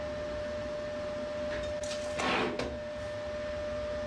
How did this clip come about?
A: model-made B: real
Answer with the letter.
B